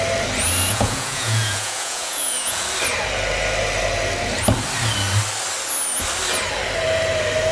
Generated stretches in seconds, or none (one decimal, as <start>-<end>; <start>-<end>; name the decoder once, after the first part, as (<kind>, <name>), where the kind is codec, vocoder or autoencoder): 0.7-2.6 (vocoder, Vocos)